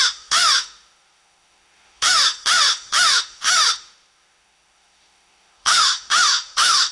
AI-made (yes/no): yes